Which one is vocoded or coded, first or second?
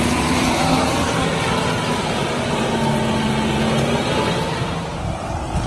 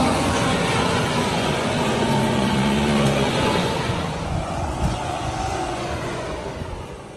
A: second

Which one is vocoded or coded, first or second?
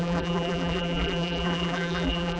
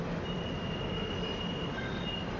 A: first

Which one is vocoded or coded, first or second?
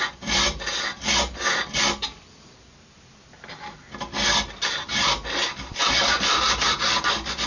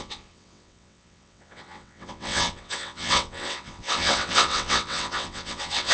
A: second